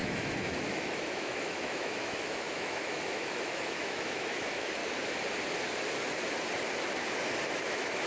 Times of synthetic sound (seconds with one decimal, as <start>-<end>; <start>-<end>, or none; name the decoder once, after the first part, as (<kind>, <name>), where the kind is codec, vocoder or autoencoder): 0.0-4.8 (autoencoder, DAC-VAE); 7.5-8.1